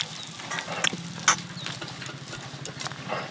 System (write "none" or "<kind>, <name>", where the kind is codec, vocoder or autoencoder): none